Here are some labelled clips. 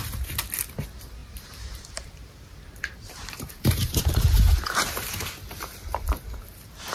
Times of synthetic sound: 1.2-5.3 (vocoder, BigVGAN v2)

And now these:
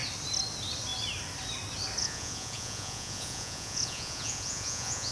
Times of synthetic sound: 2.0-5.1 (vocoder, Vocos)

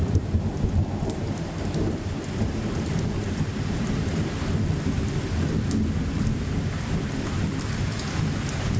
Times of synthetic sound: 0.0-4.2 (vocoder, BigVGAN v2)

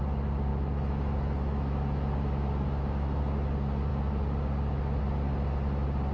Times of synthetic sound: 0.5-3.2 (autoencoder, DAC-VAE)

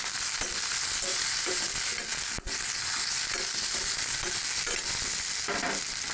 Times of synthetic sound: 1.1-1.6 (vocoder, BigVGAN v2)